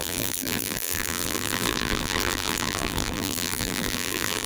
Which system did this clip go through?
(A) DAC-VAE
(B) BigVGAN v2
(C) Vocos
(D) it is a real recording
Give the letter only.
B